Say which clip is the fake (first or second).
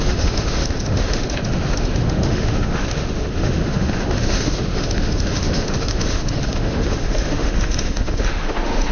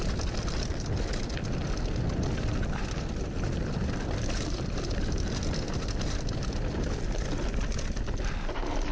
first